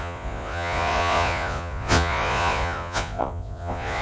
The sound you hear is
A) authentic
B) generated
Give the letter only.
B